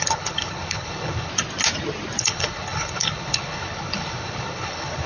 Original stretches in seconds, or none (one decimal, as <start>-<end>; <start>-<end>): 1.3-2.2